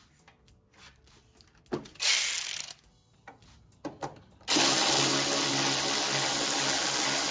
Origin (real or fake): real